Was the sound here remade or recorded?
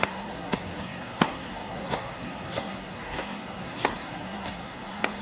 remade